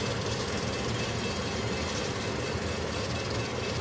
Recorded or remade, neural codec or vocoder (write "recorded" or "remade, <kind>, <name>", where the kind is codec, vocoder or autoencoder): remade, vocoder, BigVGAN v2